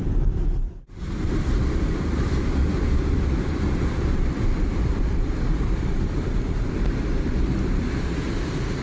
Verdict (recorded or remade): remade